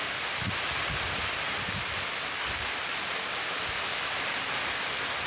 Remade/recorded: recorded